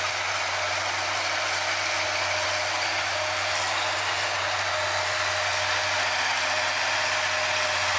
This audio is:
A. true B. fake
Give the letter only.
A